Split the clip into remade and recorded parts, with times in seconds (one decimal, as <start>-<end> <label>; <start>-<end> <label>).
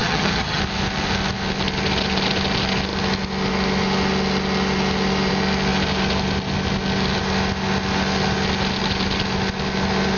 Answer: 0.0-0.6 remade; 0.6-10.2 recorded